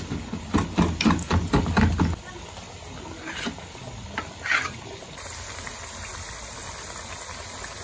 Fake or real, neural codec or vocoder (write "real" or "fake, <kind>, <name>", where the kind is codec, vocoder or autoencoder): real